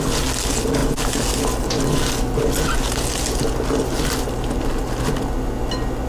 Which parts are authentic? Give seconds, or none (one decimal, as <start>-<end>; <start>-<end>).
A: 0.0-6.1